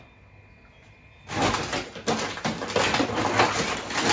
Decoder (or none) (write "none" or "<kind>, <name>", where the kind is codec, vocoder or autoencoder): none